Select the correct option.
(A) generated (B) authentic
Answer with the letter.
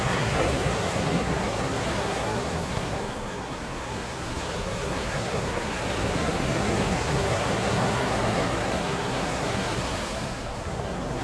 A